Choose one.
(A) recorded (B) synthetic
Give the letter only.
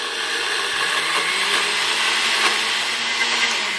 A